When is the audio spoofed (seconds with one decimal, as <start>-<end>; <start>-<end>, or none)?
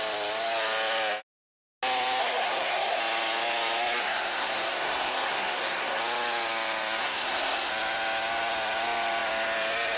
2.2-3.0; 4.0-6.0; 7.0-7.7